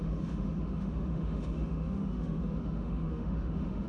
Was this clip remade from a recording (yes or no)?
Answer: yes